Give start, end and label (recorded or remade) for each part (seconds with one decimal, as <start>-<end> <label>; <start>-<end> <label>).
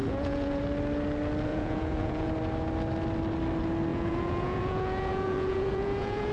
0.0-0.6 remade; 0.6-1.5 recorded; 1.5-2.3 remade; 2.3-3.9 recorded; 3.9-6.3 remade